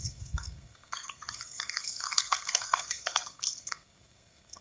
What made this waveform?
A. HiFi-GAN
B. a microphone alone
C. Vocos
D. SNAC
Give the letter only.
D